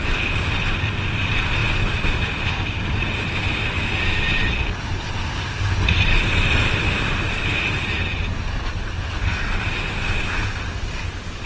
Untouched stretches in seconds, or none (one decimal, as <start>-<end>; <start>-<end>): 0.0-11.5